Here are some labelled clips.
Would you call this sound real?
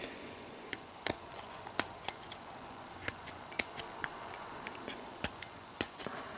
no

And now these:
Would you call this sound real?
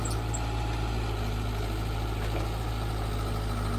yes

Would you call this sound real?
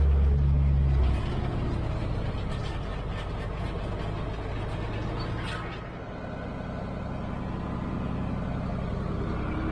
yes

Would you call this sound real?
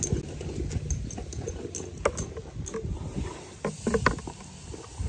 yes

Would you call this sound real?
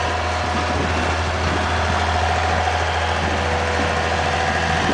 yes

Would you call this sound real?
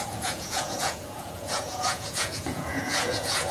no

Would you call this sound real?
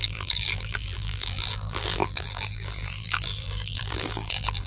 no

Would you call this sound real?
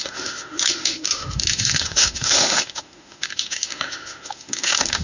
no